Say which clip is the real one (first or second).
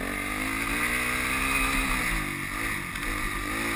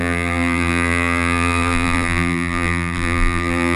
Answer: first